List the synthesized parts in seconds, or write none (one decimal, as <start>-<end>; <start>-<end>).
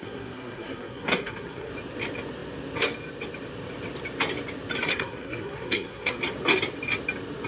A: 0.0-1.7; 4.9-6.2